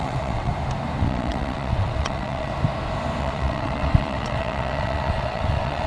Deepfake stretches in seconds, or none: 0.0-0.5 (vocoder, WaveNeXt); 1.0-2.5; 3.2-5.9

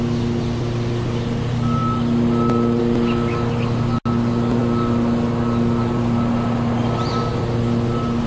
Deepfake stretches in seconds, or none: none

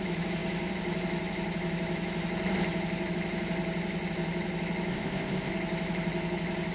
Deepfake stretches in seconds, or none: 4.9-5.5 (codec, ZipCodec)

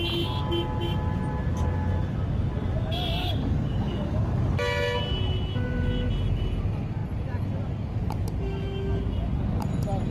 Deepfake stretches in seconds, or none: 3.2-4.4 (codec, DAC)

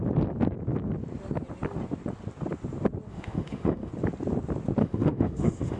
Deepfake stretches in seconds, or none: 3.1-3.9 (autoencoder, DAC-VAE); 4.8-5.8

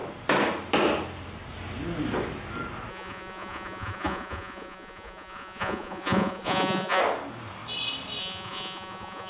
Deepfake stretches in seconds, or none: 2.9-7.0 (vocoder, Vocos); 8.2-9.3

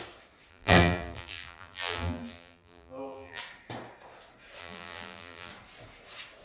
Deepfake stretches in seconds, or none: 0.5-3.4 (vocoder, BigVGAN v2); 4.6-5.5

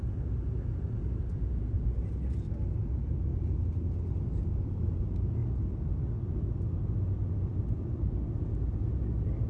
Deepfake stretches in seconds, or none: 7.5-9.5 (vocoder, BigVGAN v2)